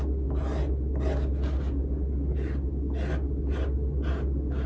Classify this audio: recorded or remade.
recorded